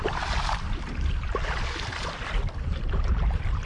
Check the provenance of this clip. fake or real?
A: real